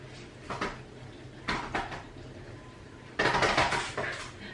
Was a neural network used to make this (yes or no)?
no